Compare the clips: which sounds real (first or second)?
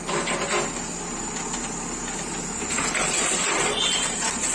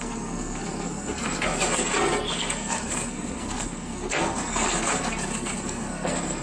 first